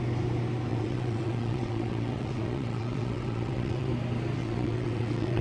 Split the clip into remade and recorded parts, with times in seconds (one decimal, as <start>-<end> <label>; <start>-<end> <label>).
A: 0.0-0.7 recorded; 0.7-3.9 remade; 3.9-4.4 recorded; 4.4-5.4 remade